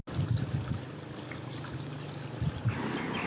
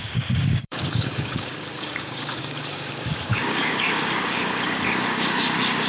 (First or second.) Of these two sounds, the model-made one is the second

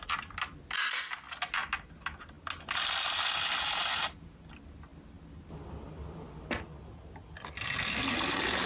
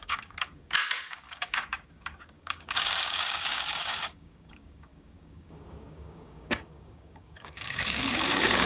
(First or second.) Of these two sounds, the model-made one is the second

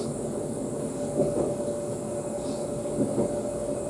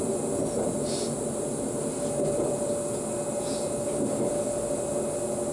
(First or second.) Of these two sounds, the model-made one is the first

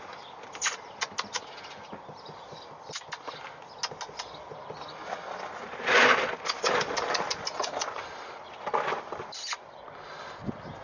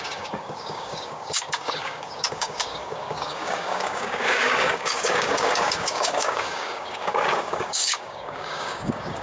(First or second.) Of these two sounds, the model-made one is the second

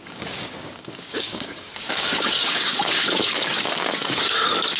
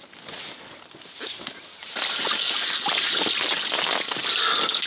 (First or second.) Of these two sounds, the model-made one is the first